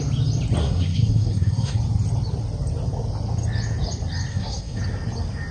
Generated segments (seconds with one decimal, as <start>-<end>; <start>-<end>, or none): 0.6-1.8; 4.3-4.8